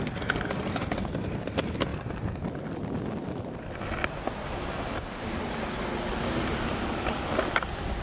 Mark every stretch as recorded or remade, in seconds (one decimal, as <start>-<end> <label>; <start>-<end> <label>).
0.0-8.0 recorded